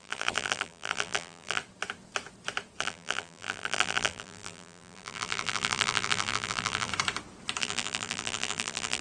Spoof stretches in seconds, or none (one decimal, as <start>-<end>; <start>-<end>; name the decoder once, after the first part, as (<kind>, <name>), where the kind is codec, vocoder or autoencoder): 0.0-1.6 (vocoder, BigVGAN v2); 2.8-6.9; 7.6-9.0